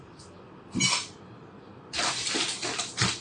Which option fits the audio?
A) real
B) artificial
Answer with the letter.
A